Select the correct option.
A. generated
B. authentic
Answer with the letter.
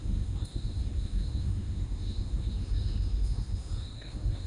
A